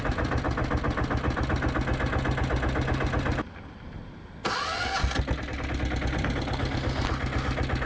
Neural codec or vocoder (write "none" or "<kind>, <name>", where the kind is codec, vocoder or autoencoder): none